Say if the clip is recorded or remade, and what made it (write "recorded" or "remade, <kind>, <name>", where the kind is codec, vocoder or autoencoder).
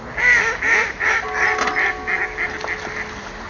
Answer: recorded